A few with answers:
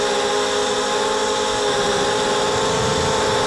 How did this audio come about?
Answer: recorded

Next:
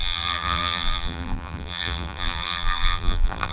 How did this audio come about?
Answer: remade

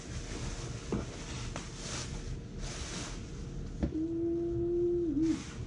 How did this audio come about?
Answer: recorded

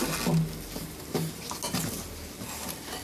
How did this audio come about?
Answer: recorded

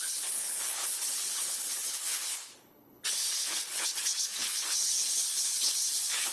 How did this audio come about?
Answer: remade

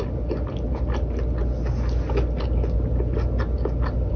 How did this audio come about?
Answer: recorded